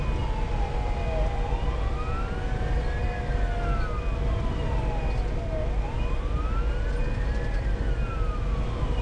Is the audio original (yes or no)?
yes